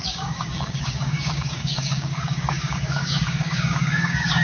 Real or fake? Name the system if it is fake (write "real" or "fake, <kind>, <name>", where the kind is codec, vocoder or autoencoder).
fake, codec, DAC